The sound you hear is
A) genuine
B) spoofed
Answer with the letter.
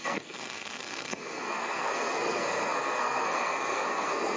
B